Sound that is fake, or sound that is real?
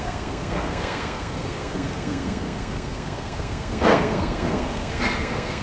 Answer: fake